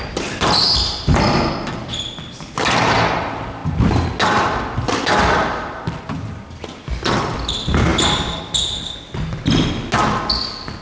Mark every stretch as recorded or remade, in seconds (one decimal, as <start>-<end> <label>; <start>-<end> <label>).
0.0-10.8 recorded